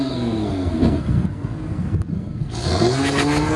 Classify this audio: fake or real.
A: fake